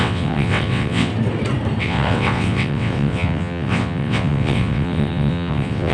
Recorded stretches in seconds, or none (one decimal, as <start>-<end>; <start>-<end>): 1.1-1.8